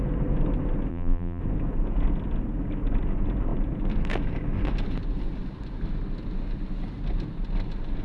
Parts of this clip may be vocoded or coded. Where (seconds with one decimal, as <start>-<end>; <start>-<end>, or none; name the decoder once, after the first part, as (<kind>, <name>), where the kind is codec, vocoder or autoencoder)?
0.9-1.4 (vocoder, BigVGAN v2)